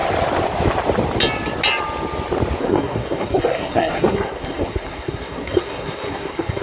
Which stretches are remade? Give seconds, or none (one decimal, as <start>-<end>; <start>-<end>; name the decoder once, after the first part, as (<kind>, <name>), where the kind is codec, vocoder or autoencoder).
2.6-6.6 (codec, SNAC)